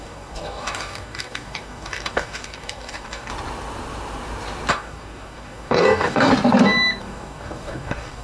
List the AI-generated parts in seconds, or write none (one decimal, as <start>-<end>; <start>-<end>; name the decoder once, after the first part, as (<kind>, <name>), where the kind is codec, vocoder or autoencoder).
0.0-3.3 (codec, DAC); 4.7-6.3; 7.0-8.2